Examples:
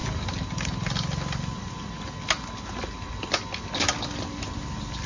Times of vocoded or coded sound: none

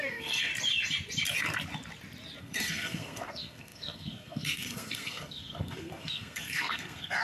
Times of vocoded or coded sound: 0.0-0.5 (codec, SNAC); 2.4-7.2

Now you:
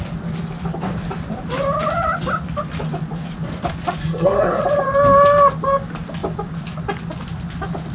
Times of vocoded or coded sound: 4.0-4.6 (codec, SNAC)